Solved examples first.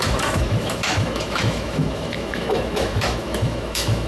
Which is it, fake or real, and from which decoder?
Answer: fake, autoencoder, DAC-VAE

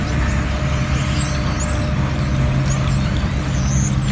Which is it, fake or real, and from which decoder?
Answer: real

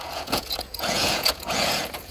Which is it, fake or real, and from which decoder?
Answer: fake, vocoder, Vocos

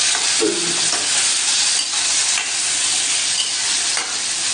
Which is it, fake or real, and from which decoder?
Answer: real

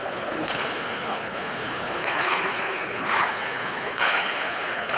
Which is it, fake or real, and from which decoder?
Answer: fake, codec, HILCodec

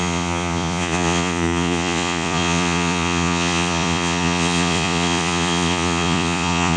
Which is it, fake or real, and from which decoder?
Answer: fake, vocoder, Vocos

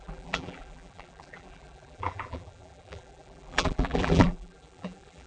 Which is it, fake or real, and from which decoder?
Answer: fake, vocoder, BigVGAN v2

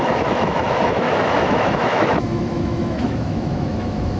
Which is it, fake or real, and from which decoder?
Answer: fake, autoencoder, DAC-VAE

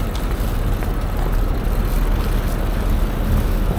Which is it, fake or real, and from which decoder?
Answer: real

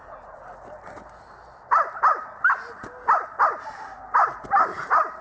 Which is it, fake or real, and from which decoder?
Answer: real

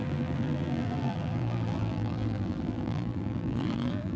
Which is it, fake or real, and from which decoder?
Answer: fake, vocoder, BigVGAN v2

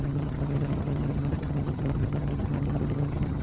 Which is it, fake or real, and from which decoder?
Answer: fake, vocoder, HiFi-GAN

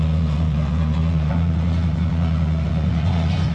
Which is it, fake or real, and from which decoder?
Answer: fake, vocoder, Vocos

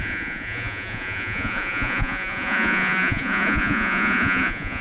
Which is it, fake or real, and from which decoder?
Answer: fake, vocoder, Vocos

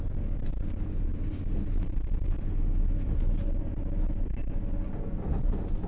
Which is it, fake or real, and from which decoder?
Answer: real